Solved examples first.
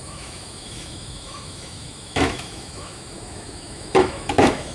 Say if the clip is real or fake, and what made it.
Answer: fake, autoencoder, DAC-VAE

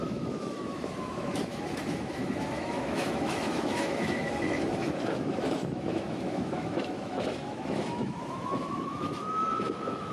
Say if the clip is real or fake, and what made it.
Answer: fake, autoencoder, DAC-VAE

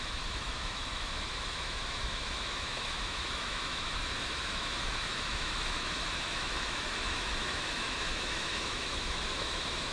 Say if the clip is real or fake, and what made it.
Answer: fake, autoencoder, DAC-VAE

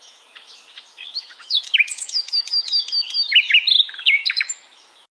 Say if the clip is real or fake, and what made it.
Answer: fake, autoencoder, DAC-VAE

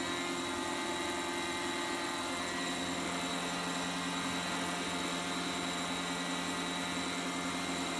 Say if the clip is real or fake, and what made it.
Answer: real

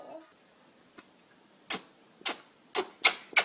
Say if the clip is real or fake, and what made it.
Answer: real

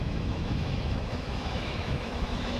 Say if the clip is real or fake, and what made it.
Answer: fake, autoencoder, DAC-VAE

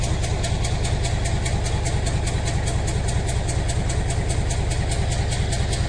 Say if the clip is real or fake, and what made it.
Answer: real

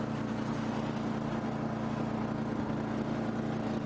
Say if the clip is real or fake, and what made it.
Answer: real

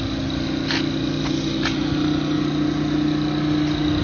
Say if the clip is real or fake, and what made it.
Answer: real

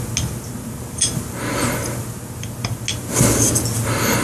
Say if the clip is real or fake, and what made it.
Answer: real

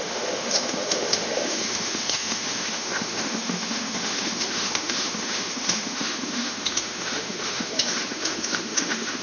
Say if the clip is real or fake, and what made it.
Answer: fake, autoencoder, DAC-VAE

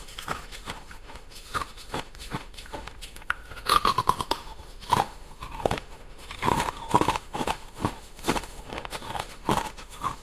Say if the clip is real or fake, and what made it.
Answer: fake, autoencoder, DAC-VAE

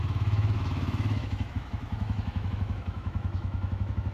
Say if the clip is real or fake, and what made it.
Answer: fake, autoencoder, DAC-VAE